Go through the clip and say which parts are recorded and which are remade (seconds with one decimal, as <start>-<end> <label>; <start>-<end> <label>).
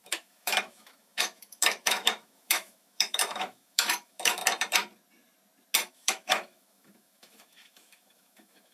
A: 0.0-4.4 remade; 4.4-5.9 recorded; 5.9-8.7 remade